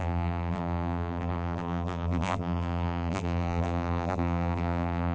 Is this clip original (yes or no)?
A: no